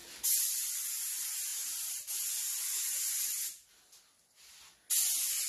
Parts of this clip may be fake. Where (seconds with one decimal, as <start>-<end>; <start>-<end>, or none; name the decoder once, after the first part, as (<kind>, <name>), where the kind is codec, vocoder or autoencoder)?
none